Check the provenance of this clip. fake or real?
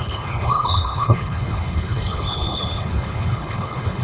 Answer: fake